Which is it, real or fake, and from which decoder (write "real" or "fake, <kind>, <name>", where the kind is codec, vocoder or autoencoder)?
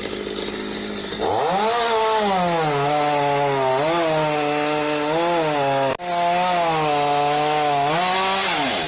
real